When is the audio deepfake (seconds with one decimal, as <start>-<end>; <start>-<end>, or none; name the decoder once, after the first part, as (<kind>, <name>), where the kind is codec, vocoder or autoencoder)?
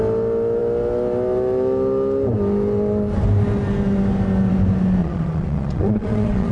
5.0-6.5 (vocoder, Vocos)